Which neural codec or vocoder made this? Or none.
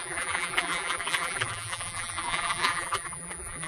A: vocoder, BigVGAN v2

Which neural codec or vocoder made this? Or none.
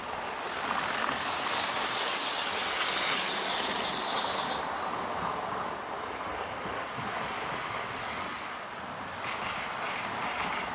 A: none